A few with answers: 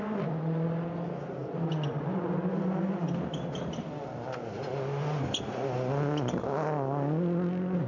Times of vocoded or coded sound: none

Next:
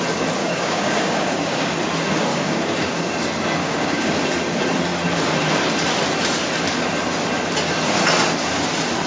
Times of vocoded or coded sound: 0.4-1.7; 2.3-3.1; 3.6-4.1

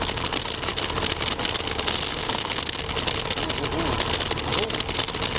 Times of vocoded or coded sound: 2.1-2.6

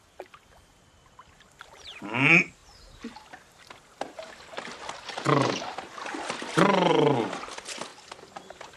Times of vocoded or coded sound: none